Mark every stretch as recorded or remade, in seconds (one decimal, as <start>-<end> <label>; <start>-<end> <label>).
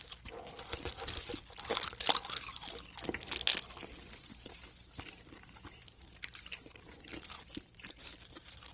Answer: 0.0-3.5 recorded; 3.5-8.7 remade